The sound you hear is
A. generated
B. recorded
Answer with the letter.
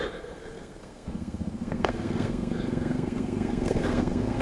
A